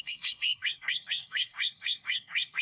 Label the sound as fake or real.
fake